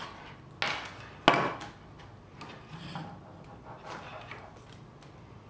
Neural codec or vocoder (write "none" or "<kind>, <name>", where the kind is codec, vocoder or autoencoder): none